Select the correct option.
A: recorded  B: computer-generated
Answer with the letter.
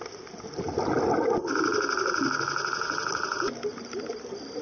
A